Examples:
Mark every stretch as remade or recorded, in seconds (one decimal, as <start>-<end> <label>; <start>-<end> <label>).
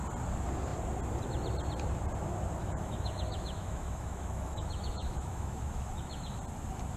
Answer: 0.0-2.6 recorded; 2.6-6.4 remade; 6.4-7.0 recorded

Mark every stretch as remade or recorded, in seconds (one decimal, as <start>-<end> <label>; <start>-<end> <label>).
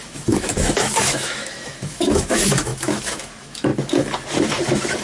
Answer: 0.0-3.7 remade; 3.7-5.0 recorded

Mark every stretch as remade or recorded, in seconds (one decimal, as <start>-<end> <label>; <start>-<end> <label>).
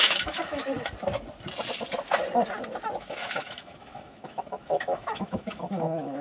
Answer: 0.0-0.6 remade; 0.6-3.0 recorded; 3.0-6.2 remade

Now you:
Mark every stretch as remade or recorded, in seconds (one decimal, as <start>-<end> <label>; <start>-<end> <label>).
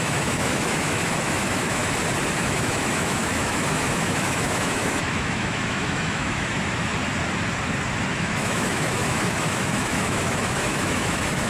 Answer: 0.0-1.8 remade; 1.8-2.4 recorded; 2.4-6.9 remade; 6.9-8.1 recorded; 8.1-11.5 remade